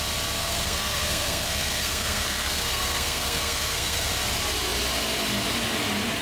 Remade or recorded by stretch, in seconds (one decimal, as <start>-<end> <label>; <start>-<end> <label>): 0.0-0.4 recorded; 0.4-4.1 remade; 4.1-6.2 recorded

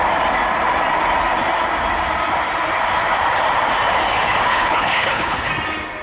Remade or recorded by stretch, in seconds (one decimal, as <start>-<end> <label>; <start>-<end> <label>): 0.0-4.5 recorded; 4.5-5.5 remade; 5.5-6.0 recorded

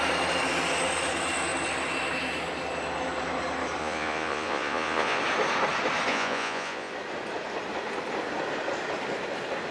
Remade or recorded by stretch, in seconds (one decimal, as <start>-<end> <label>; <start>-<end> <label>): 0.0-3.8 recorded; 3.8-5.2 remade; 5.2-6.1 recorded; 6.1-6.9 remade; 6.9-9.7 recorded

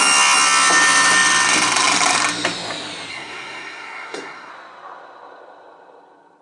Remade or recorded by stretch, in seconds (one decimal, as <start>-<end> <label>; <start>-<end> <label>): 0.0-3.1 recorded; 3.1-4.5 remade; 4.5-6.4 recorded

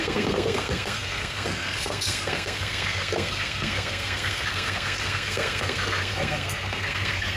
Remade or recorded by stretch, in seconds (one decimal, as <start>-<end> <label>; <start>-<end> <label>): 0.0-7.4 remade

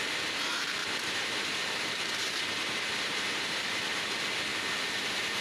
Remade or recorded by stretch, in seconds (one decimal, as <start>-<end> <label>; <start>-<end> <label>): 0.0-0.8 recorded; 0.8-3.8 remade; 3.8-5.4 recorded

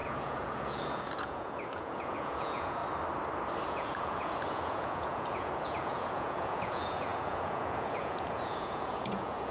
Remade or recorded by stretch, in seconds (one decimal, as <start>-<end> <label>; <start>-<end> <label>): 0.0-2.8 remade; 2.8-3.7 recorded; 3.7-9.5 remade